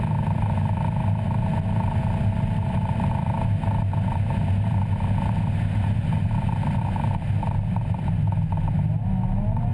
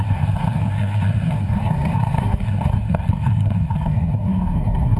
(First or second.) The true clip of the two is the first